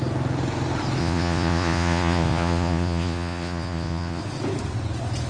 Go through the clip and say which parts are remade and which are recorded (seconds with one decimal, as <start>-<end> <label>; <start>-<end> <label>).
0.0-1.0 recorded; 1.0-4.2 remade; 4.2-5.3 recorded